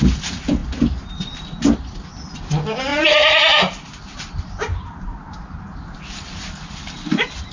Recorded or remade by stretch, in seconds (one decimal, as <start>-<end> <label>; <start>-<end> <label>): 0.0-7.5 recorded